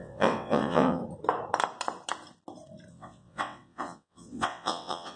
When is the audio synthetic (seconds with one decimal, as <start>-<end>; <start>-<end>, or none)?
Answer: 0.0-1.0; 2.9-5.2